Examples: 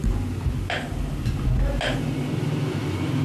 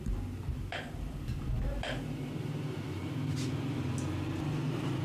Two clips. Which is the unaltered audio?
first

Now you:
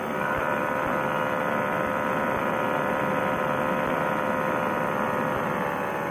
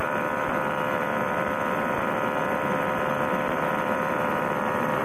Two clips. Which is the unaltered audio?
first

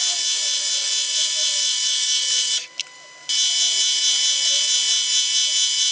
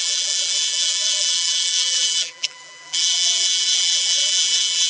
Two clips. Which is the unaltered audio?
first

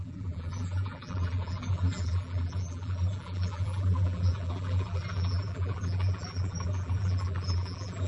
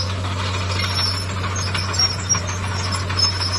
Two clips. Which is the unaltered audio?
second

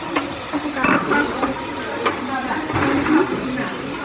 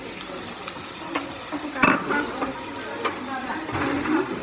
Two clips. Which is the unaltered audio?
second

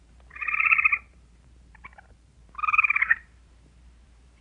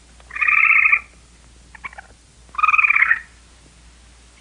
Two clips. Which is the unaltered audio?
second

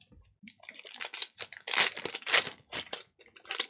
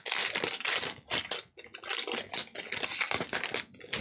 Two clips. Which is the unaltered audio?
second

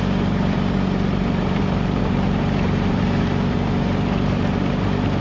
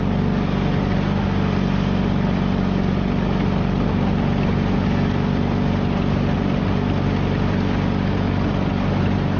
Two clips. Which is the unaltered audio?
second